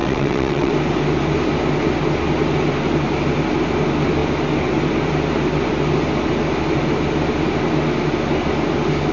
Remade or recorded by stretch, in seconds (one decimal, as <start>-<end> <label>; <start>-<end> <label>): 0.0-0.7 remade; 0.7-9.1 recorded